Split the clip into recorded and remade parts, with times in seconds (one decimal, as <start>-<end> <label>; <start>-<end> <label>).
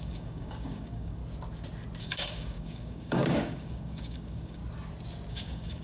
0.0-1.2 remade; 1.2-2.0 recorded; 2.0-4.6 remade; 4.6-5.3 recorded; 5.3-5.8 remade